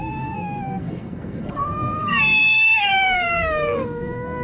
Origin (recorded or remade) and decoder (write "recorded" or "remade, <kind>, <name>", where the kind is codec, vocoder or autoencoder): remade, codec, SNAC